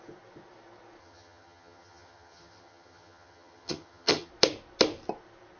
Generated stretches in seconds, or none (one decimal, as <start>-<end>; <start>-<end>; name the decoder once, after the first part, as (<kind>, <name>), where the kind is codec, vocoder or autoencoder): 1.0-4.3 (vocoder, HiFi-GAN)